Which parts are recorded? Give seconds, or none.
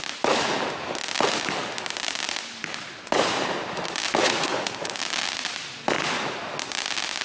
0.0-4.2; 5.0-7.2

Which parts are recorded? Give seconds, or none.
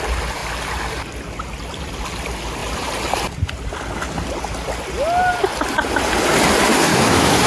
0.0-6.9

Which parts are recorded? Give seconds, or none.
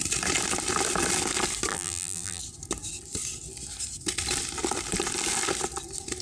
0.0-1.7; 2.4-6.2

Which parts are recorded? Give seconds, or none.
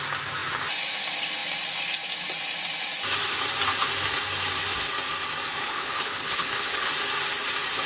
0.0-5.6; 6.9-7.9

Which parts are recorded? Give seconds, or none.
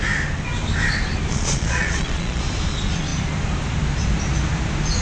0.0-1.3; 2.4-5.0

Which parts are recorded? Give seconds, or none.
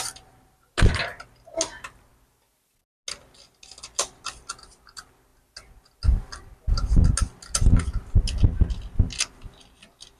0.0-10.2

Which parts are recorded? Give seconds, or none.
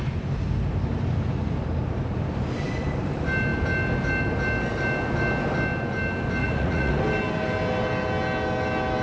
0.0-6.4; 7.0-9.0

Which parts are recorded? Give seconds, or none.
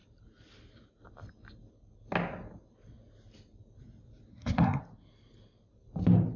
0.0-4.3; 4.8-6.4